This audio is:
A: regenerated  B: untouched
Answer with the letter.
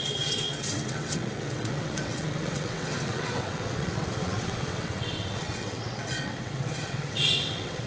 A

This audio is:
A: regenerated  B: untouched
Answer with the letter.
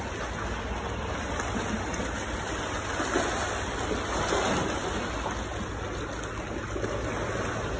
B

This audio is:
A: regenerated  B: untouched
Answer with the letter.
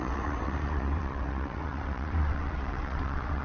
A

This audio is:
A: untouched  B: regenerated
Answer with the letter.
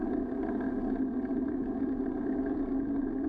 A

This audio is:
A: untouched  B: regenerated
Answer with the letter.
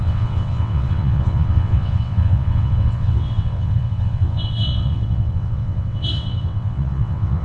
B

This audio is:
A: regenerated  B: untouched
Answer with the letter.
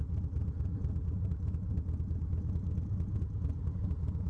B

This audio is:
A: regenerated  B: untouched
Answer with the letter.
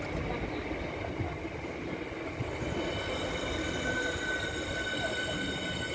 B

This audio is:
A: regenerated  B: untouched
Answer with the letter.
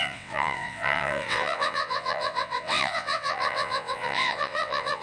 A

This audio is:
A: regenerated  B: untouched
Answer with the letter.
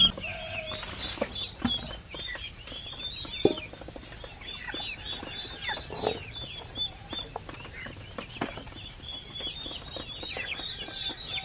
B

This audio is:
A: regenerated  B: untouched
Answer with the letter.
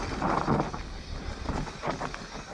B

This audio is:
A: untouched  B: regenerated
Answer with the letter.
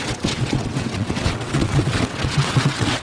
B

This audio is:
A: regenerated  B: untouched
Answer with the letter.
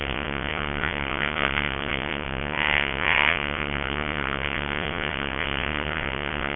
A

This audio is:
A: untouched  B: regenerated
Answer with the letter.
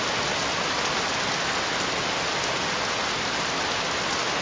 A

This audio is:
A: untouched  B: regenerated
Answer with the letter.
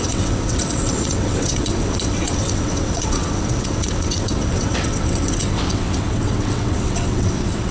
B